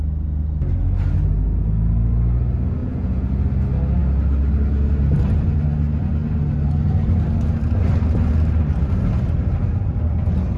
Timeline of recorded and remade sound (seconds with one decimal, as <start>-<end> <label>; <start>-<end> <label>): 0.0-2.8 recorded; 2.8-3.3 remade; 3.3-10.6 recorded